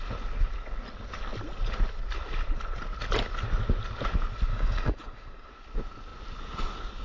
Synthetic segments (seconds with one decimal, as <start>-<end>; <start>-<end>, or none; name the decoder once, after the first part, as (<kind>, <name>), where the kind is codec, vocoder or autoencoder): 4.5-5.5 (codec, DAC)